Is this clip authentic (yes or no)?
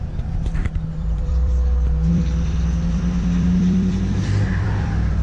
no